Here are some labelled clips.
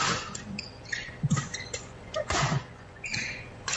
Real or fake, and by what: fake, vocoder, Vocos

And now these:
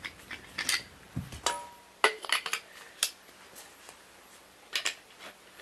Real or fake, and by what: real